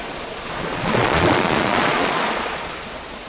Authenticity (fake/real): fake